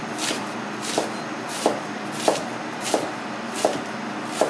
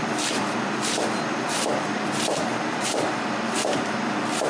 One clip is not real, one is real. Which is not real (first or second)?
second